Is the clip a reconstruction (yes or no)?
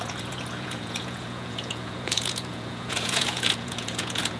yes